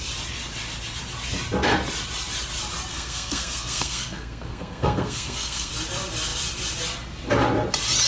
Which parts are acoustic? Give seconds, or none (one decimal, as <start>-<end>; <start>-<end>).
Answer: 0.0-2.9; 5.7-8.1